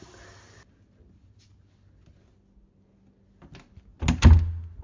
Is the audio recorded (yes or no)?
yes